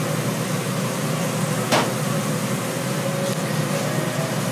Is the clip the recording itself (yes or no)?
yes